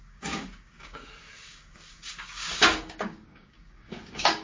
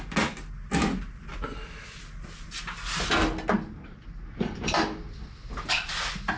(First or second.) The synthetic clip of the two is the first